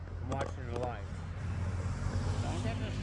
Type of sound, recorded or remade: recorded